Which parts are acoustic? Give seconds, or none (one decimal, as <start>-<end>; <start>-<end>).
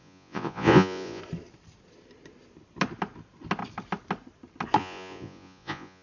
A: 1.2-4.8